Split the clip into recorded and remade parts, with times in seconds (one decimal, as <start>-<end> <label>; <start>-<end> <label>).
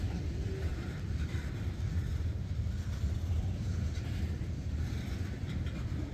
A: 0.0-0.7 recorded; 0.7-1.4 remade; 1.4-2.1 recorded; 2.1-5.0 remade; 5.0-6.1 recorded